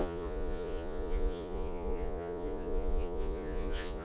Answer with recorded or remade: remade